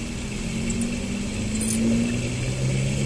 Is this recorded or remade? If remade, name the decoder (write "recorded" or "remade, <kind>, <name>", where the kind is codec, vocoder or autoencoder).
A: recorded